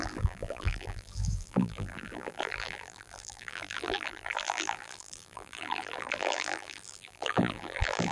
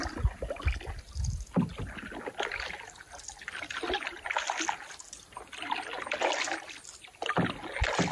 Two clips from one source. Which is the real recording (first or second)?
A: second